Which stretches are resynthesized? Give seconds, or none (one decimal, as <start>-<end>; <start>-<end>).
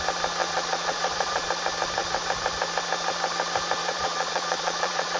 0.4-1.5; 3.8-5.2